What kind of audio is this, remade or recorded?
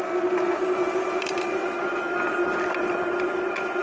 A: recorded